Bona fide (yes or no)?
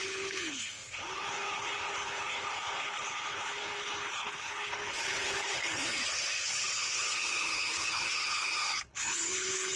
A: no